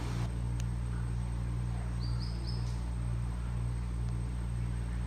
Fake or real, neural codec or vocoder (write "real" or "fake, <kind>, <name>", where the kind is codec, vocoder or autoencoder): fake, vocoder, BigVGAN v2